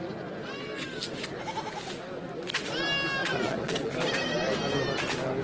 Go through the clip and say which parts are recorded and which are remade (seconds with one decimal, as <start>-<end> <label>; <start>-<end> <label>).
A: 0.0-3.2 recorded; 3.2-3.9 remade; 3.9-5.4 recorded